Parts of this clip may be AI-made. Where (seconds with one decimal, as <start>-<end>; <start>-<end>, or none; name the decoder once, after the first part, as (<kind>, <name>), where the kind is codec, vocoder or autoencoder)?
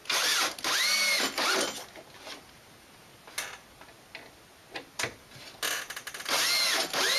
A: none